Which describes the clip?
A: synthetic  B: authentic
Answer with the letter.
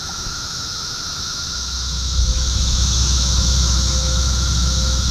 A